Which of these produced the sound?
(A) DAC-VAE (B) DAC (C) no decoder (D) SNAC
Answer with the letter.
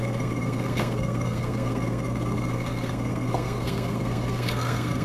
D